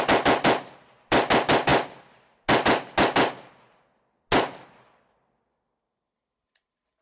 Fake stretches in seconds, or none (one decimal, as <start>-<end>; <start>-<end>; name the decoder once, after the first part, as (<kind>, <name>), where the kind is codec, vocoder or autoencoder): none